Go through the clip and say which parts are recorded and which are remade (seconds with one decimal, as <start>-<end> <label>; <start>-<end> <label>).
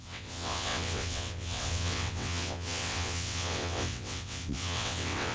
0.0-5.3 remade